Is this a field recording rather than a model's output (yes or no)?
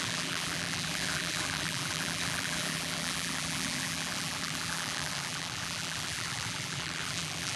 no